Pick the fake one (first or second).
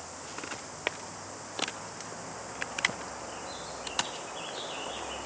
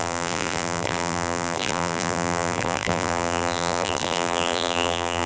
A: second